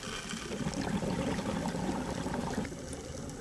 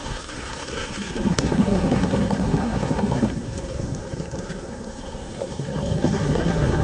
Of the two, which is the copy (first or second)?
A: second